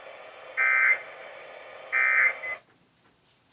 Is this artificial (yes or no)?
no